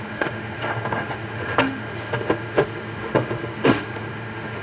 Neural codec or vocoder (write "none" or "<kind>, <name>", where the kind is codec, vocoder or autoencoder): autoencoder, DAC-VAE